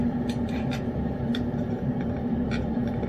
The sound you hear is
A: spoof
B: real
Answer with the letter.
A